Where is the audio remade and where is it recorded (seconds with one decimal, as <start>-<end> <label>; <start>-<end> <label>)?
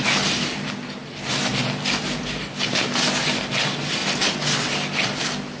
0.0-5.6 recorded